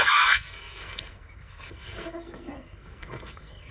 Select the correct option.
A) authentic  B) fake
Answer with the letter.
B